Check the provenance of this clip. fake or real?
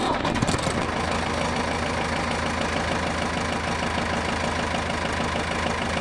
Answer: real